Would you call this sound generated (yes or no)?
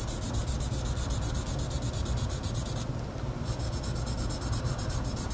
no